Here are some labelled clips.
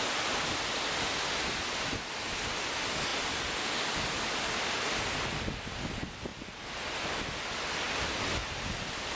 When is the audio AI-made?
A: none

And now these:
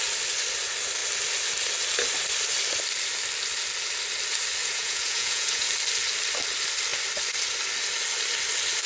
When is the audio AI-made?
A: 4.6-5.7 (vocoder, Vocos)

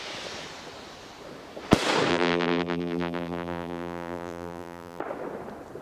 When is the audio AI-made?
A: 2.1-5.0 (vocoder, BigVGAN v2)

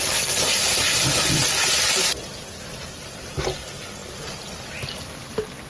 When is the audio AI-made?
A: none

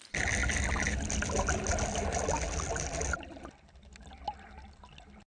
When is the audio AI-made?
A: none

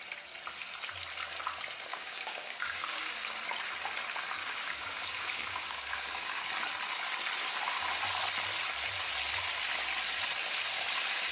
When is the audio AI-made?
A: 1.9-3.4 (codec, DAC); 4.4-6.4

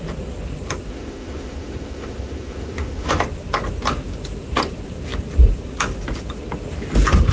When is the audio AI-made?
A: 0.9-3.2 (autoencoder, DAC-VAE)

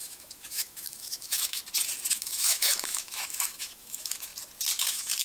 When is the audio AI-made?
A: 0.0-1.6 (autoencoder, DAC-VAE); 2.1-4.3; 4.8-5.2